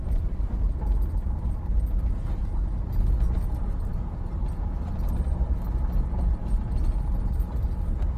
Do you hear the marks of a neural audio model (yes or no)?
no